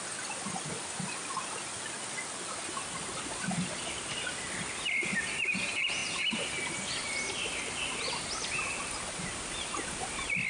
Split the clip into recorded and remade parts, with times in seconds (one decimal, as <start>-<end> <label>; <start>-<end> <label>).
0.0-10.5 recorded